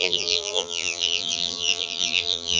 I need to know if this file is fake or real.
fake